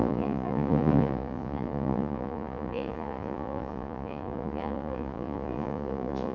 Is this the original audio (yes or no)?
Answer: no